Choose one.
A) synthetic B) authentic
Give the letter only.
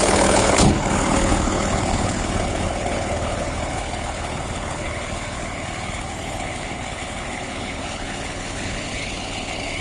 A